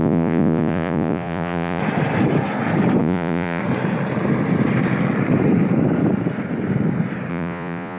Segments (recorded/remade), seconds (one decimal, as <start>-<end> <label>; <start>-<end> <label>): 0.0-1.8 remade; 1.8-3.0 recorded; 3.0-3.6 remade; 3.6-7.3 recorded; 7.3-8.0 remade